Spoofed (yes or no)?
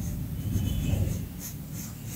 no